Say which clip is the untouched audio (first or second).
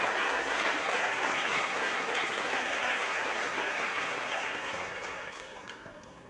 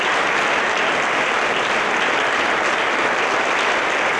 second